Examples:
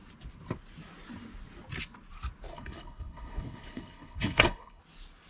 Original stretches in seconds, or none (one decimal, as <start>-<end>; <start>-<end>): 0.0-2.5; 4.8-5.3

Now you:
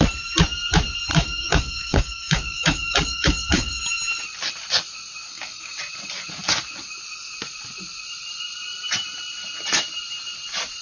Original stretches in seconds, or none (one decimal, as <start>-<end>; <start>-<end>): 0.0-1.1; 3.8-5.3; 5.8-10.8

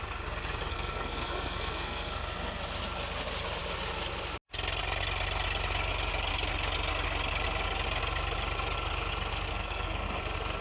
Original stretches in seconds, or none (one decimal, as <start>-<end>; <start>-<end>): 0.0-0.7; 2.6-9.5; 10.2-10.6